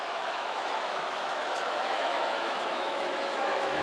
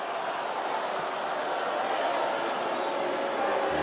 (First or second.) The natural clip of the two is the second